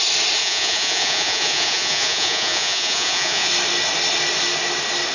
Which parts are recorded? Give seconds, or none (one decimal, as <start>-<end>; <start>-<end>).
0.0-0.4; 3.5-5.1